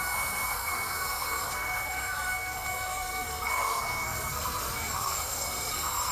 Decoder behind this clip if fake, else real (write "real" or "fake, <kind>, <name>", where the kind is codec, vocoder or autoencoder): fake, codec, SNAC